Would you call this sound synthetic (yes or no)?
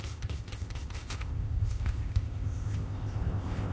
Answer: yes